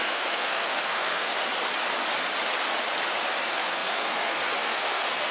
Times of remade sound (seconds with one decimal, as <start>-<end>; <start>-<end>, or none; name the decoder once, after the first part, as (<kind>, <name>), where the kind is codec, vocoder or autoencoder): 0.0-1.4 (codec, SNAC); 3.4-5.3